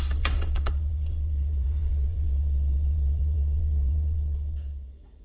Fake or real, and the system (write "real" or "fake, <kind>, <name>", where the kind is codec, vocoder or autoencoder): fake, vocoder, WaveNeXt